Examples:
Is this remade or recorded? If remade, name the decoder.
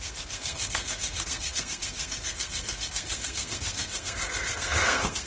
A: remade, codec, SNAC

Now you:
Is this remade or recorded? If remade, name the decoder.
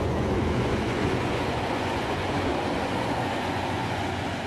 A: remade, vocoder, Vocos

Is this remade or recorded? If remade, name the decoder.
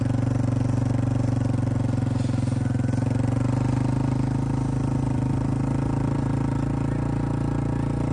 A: recorded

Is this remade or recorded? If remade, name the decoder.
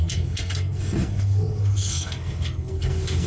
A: remade, codec, SNAC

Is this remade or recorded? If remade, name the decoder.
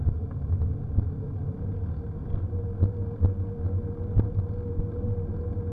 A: recorded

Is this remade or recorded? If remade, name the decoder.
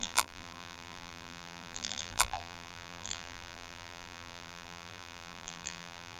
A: remade, vocoder, BigVGAN v2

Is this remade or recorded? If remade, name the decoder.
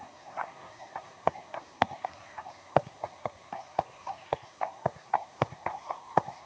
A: remade, codec, SNAC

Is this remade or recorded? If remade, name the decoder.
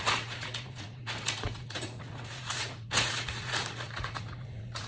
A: remade, vocoder, Vocos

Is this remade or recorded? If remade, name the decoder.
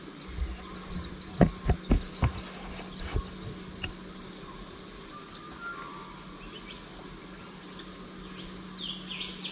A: recorded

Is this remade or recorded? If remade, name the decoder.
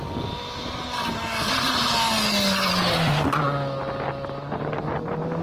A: recorded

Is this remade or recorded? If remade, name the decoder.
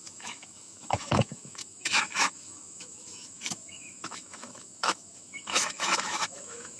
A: remade, autoencoder, DAC-VAE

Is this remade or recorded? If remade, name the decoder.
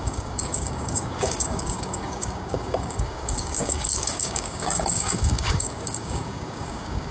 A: remade, codec, DAC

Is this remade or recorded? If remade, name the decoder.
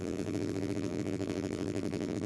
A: remade, vocoder, BigVGAN v2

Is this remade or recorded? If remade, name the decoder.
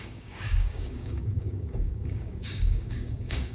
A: remade, codec, DAC